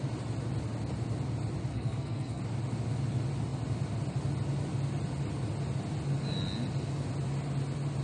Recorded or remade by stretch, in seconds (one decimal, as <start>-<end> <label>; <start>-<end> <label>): 0.0-1.7 recorded; 1.7-2.4 remade; 2.4-8.0 recorded